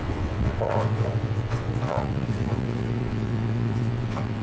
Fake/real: fake